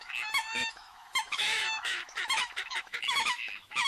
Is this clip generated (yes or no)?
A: yes